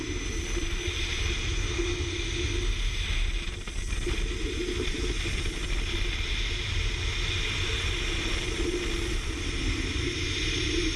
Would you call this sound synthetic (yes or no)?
no